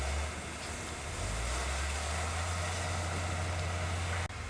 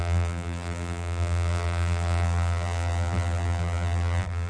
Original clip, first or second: first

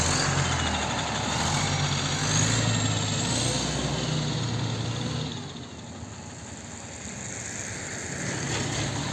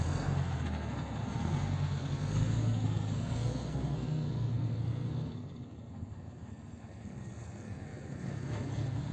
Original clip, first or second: first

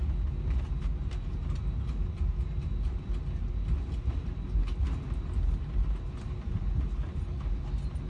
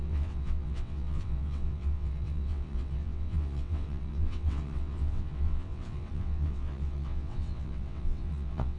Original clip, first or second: first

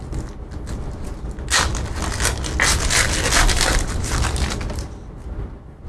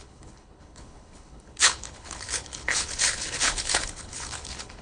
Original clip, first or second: first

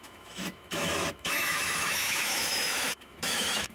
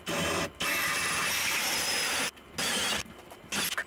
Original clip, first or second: second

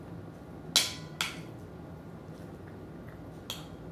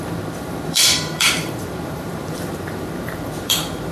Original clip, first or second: first